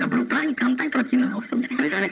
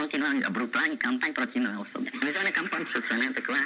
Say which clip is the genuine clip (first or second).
second